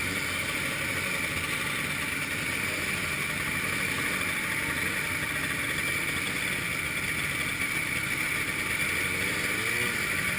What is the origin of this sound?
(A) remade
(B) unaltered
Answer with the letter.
B